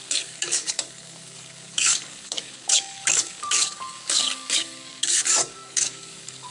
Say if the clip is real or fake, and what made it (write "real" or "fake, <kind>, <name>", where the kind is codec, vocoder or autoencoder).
fake, codec, DAC